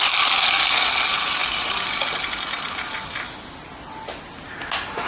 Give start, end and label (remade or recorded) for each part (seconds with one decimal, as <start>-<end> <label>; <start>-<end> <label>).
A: 0.0-5.1 recorded